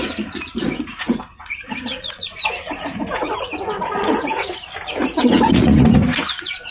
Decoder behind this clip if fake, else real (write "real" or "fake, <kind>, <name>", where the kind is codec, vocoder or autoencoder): fake, vocoder, Vocos